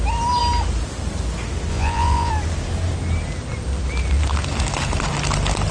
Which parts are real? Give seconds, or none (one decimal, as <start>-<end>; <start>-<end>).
0.0-1.7; 2.3-5.7